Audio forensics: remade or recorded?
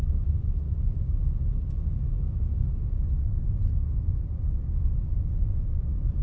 recorded